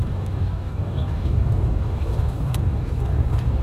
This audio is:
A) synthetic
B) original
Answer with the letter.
A